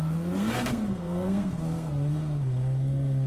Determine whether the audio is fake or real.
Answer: fake